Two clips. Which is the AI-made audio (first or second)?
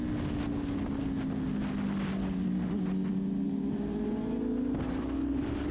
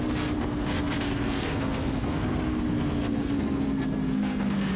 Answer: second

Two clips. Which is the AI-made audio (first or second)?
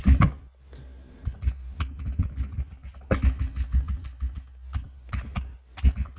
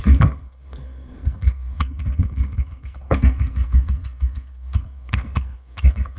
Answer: second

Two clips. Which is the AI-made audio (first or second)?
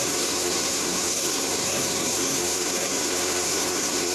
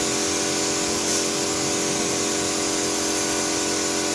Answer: first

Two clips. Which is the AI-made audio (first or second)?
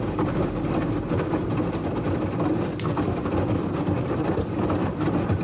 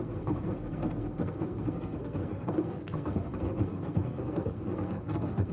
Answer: second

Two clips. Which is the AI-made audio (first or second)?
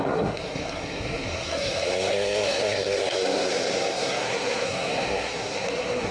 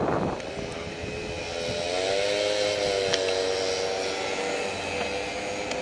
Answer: first